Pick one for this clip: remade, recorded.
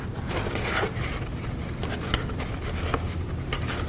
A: recorded